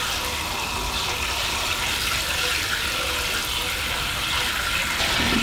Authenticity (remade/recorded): recorded